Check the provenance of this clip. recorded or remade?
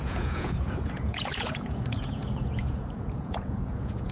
remade